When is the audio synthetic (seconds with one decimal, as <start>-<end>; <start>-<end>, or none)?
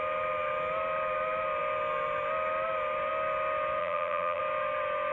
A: 3.8-4.4